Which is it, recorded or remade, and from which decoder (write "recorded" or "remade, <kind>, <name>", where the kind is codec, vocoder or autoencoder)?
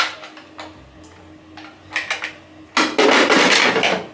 recorded